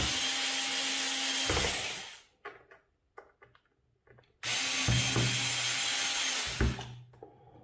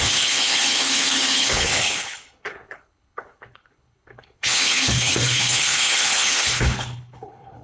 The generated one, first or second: second